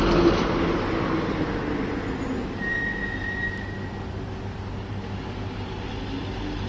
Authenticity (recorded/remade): recorded